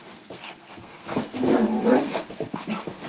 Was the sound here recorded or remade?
remade